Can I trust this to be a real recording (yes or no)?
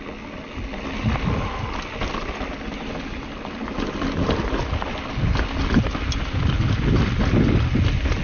yes